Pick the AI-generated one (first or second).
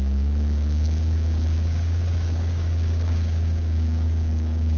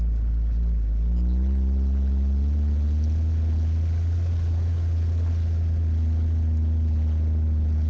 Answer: first